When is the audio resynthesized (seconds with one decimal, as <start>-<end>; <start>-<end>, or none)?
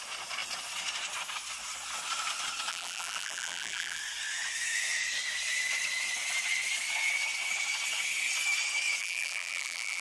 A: 2.7-4.0; 9.0-10.0